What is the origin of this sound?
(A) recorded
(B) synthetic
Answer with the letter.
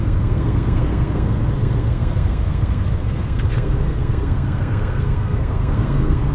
B